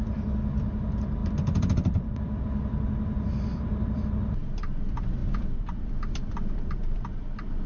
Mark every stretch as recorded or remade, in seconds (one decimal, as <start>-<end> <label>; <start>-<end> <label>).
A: 0.0-7.7 remade